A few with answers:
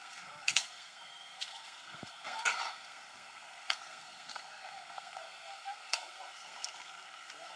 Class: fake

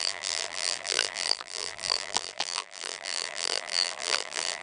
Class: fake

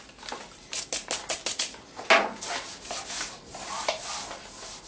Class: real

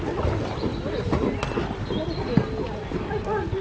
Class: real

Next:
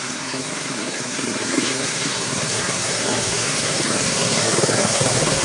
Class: fake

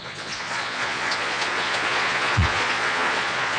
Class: fake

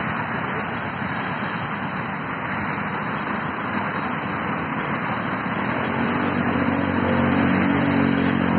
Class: real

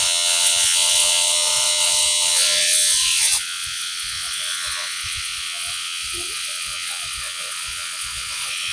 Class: fake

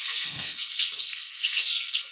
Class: fake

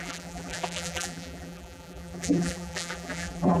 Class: fake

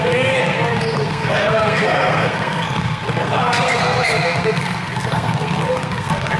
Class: fake